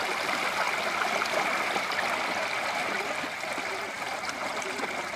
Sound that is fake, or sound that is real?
real